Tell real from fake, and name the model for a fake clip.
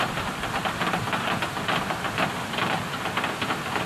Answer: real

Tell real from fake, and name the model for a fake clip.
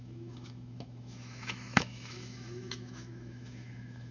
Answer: fake, autoencoder, DAC-VAE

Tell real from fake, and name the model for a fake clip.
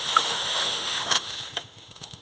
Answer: fake, autoencoder, DAC-VAE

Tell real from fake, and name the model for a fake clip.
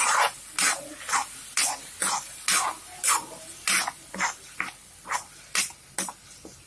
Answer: real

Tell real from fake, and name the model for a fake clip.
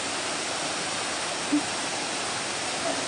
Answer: real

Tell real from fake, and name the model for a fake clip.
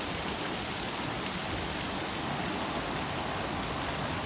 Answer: real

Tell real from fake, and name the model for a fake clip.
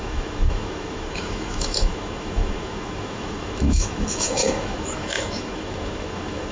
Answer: fake, autoencoder, DAC-VAE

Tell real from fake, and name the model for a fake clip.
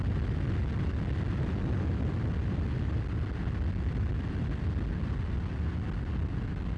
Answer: real